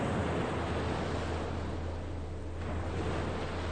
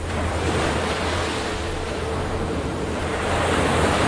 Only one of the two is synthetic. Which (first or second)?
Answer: second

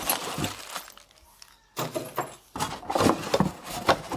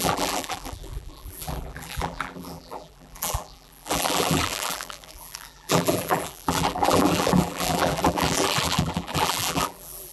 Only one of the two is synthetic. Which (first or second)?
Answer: second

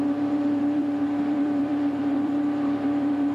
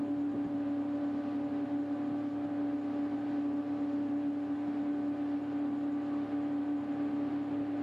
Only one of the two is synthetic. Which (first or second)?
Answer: first